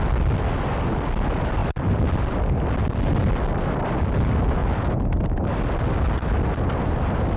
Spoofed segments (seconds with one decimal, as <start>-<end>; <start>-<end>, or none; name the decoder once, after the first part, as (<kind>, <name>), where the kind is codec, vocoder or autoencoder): none